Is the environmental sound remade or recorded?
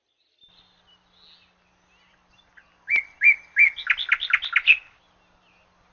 recorded